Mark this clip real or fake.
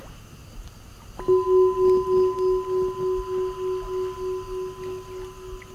real